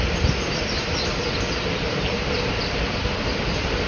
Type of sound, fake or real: real